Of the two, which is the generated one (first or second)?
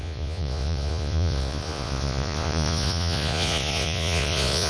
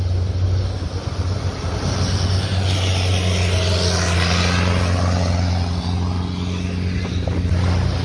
first